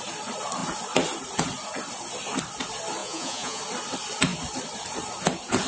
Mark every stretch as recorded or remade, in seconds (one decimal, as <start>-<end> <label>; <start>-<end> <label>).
0.0-3.0 recorded; 3.0-3.6 remade; 3.6-5.7 recorded